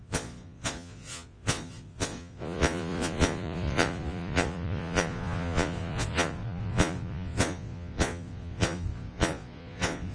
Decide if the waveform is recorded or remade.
remade